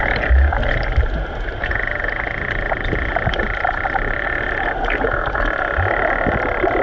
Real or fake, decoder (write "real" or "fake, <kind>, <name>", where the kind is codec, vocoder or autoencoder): real